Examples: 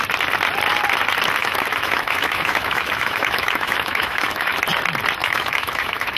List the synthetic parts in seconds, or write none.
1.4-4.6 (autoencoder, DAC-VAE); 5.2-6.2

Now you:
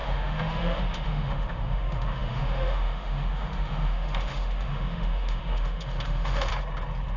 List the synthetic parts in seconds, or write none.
0.0-6.5 (autoencoder, DAC-VAE)

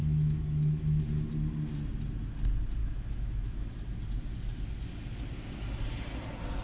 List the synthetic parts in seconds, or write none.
0.0-1.0 (autoencoder, DAC-VAE); 2.8-3.7